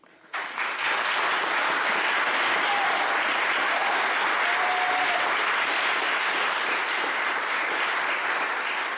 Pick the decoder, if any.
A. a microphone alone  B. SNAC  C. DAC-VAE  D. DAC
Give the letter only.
A